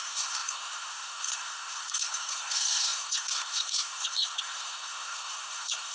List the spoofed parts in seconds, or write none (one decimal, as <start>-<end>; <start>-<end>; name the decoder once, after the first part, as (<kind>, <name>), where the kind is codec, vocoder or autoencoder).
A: 0.0-5.9 (codec, SNAC)